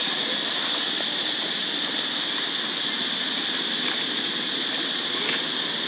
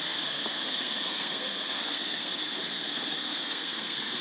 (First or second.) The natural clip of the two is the first